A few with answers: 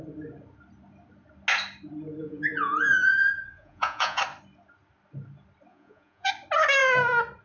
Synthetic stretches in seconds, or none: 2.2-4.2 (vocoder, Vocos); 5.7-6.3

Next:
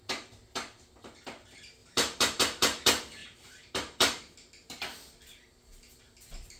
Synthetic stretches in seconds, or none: 1.8-2.4 (vocoder, BigVGAN v2); 3.2-4.2

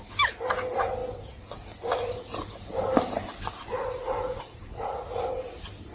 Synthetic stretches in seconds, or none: 3.7-5.2 (vocoder, Vocos)

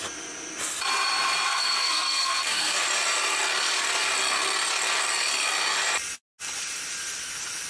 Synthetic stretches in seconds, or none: 1.5-2.8 (codec, SNAC)

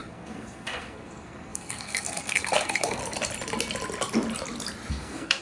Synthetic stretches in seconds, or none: 0.0-3.0 (codec, SNAC); 4.9-5.4

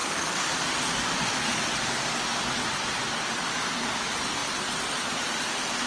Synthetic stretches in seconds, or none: none

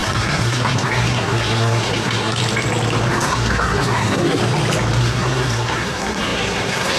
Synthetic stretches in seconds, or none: 0.0-2.4 (codec, SNAC); 3.1-4.4; 5.0-7.0

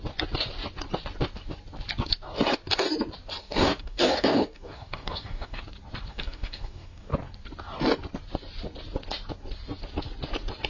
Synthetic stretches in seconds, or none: 3.4-5.6 (codec, DAC); 6.1-7.1